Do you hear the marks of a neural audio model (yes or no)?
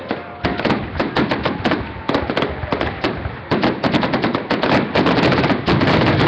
no